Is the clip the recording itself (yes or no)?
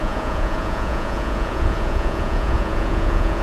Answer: no